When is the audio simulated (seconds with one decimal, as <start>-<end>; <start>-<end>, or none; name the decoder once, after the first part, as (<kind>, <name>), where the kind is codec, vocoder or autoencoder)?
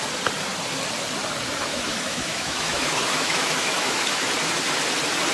1.7-4.3 (autoencoder, DAC-VAE)